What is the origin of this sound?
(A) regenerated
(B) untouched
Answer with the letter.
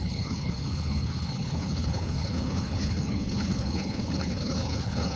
A